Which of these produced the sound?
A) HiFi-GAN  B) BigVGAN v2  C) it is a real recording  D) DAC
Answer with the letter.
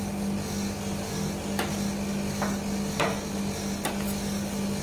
C